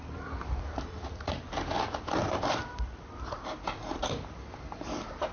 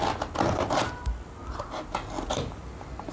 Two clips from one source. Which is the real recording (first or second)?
second